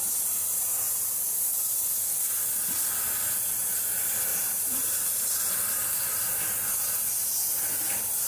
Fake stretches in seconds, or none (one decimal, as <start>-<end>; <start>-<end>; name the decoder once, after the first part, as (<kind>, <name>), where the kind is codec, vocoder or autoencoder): 4.3-5.5 (vocoder, BigVGAN v2)